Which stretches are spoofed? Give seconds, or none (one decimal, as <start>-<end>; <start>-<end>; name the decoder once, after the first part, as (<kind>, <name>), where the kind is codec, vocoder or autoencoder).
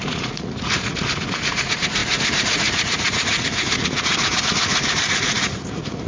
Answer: 0.0-6.1 (vocoder, Vocos)